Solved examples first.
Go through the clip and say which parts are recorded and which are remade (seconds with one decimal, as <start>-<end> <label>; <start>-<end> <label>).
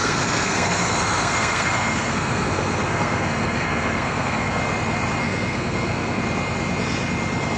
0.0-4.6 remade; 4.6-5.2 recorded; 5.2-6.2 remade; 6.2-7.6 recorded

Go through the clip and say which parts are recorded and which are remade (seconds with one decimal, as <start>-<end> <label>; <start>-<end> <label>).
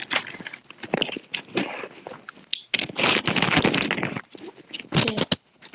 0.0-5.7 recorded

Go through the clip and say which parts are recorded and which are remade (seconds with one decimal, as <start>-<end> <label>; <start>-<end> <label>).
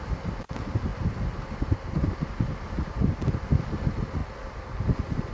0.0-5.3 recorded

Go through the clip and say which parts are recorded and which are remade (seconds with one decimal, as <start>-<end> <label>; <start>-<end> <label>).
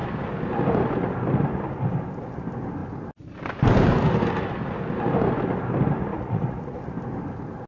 0.0-6.1 recorded; 6.1-6.8 remade; 6.8-7.7 recorded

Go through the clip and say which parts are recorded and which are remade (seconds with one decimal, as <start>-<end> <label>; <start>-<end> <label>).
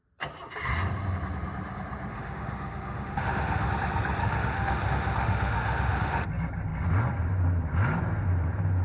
0.0-2.1 recorded; 2.1-3.7 remade; 3.7-4.2 recorded; 4.2-6.3 remade; 6.3-8.8 recorded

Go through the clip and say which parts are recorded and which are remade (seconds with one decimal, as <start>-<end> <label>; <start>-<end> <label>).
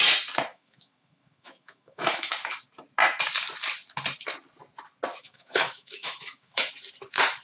0.0-0.5 recorded; 0.5-2.3 remade; 2.3-5.1 recorded; 5.1-6.7 remade; 6.7-7.4 recorded